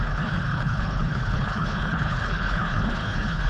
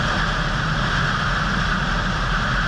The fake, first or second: first